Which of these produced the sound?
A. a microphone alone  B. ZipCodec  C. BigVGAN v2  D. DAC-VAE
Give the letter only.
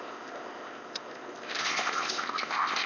B